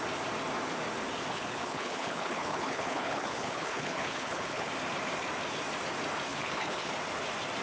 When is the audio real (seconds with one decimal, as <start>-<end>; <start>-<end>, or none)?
0.0-1.3; 4.7-6.3; 6.9-7.6